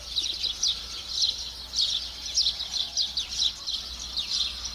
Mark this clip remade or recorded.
recorded